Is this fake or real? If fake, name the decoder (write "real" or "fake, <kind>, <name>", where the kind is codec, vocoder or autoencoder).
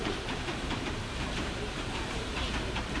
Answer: fake, vocoder, BigVGAN v2